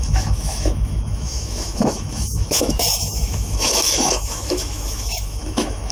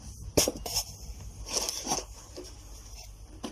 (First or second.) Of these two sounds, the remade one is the first